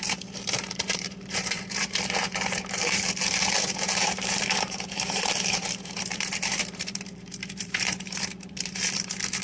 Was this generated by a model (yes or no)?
yes